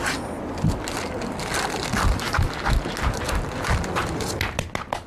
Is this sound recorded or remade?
recorded